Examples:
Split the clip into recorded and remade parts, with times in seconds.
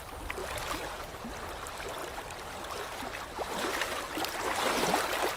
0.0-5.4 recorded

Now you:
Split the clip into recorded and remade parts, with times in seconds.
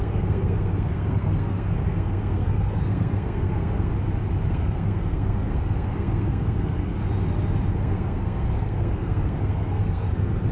0.0-3.9 remade; 3.9-4.5 recorded; 4.5-7.0 remade; 7.0-7.7 recorded; 7.7-10.5 remade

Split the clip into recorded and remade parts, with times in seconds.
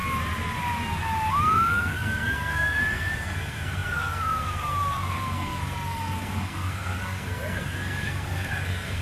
0.0-1.3 recorded; 1.3-9.0 remade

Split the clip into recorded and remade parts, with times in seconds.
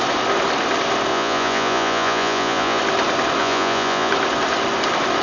0.0-1.1 recorded; 1.1-2.8 remade; 2.8-3.4 recorded; 3.4-4.1 remade; 4.1-5.2 recorded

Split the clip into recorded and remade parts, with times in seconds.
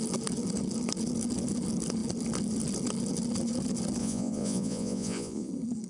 0.0-4.0 recorded; 4.0-5.5 remade; 5.5-5.9 recorded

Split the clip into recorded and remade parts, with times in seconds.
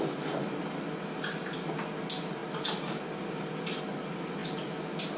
0.0-5.2 recorded